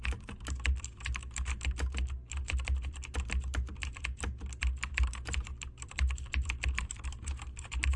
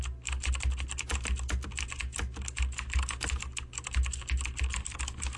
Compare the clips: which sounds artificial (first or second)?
first